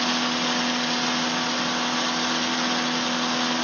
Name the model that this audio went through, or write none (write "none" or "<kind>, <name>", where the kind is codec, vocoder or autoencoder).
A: none